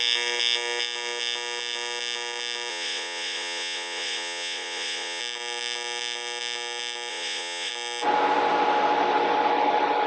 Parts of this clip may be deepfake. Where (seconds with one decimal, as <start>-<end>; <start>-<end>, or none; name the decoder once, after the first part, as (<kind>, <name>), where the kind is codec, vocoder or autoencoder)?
2.7-5.2 (vocoder, Vocos); 7.1-7.7